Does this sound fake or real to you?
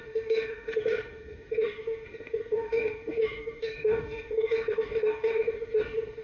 fake